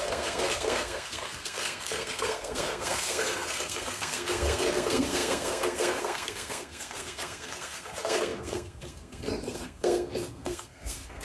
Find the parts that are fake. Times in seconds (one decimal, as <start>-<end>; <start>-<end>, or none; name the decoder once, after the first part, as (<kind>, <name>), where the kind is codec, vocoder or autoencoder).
0.0-11.2 (codec, SNAC)